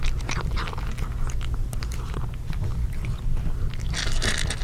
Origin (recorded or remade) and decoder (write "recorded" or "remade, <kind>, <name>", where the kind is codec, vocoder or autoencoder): recorded